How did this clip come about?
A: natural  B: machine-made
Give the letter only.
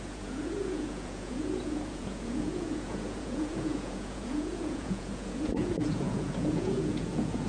B